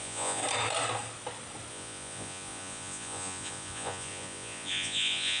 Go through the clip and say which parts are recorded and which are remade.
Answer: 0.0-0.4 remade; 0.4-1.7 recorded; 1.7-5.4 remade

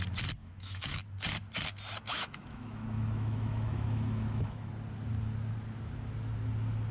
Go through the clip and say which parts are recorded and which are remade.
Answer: 0.0-0.4 recorded; 0.4-1.0 remade; 1.0-2.1 recorded; 2.1-4.7 remade; 4.7-6.9 recorded

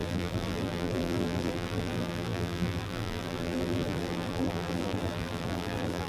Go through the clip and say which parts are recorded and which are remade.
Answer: 0.0-6.1 remade

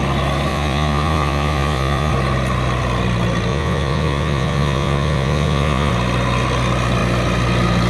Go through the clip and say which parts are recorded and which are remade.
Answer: 0.0-0.5 recorded; 0.5-2.1 remade; 2.1-3.5 recorded; 3.5-5.9 remade; 5.9-7.9 recorded

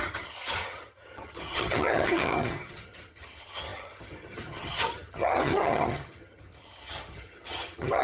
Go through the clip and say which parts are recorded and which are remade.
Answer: 0.0-8.0 remade

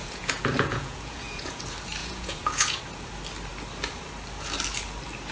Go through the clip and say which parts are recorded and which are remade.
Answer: 0.0-1.6 remade; 1.6-2.0 recorded; 2.0-2.8 remade; 2.8-5.3 recorded

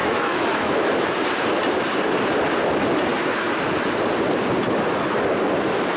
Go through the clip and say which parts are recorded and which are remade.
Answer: 0.0-1.1 remade; 1.1-6.0 recorded

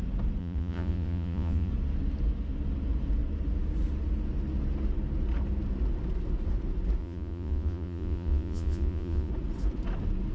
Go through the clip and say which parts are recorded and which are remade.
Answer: 0.0-0.4 recorded; 0.4-1.7 remade; 1.7-7.0 recorded; 7.0-9.3 remade; 9.3-10.3 recorded